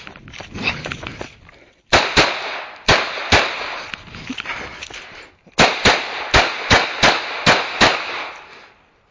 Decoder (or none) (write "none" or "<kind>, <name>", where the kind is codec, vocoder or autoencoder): none